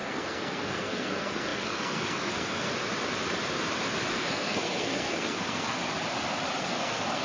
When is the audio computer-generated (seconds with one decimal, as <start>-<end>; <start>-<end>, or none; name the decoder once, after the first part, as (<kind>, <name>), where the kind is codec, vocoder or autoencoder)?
0.0-2.7 (codec, SNAC); 4.1-5.8; 6.6-7.2